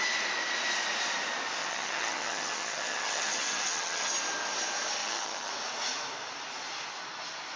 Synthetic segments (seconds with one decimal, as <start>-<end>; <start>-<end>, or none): 1.6-4.1; 5.0-5.5